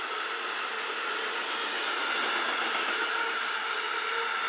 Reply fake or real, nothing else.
real